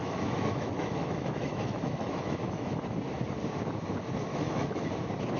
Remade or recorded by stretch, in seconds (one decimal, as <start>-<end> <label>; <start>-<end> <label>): 0.0-2.8 remade; 2.8-4.3 recorded; 4.3-4.9 remade; 4.9-5.4 recorded